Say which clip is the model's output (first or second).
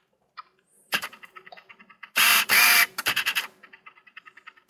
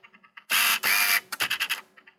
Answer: first